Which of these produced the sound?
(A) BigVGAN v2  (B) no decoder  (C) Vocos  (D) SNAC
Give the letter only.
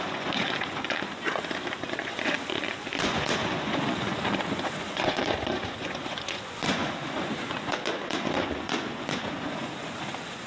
C